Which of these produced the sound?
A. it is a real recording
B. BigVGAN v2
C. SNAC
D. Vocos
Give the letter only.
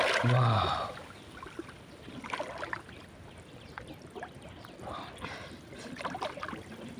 A